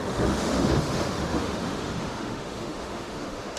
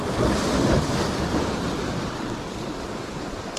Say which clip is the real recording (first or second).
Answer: second